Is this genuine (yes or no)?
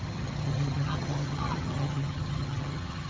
no